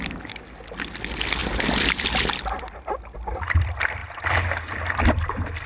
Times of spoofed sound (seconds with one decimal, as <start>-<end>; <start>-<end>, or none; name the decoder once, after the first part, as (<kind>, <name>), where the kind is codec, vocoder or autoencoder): none